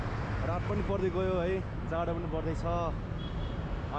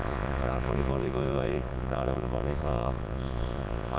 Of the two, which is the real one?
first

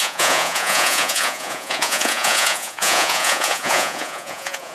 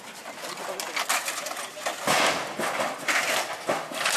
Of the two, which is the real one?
second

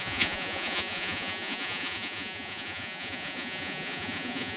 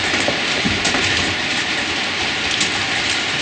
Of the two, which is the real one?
second